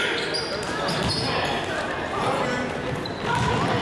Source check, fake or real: real